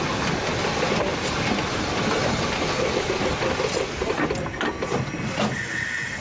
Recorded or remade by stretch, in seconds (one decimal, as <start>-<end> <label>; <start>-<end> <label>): 0.0-6.2 recorded